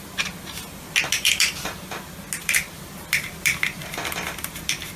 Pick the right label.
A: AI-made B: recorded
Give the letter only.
B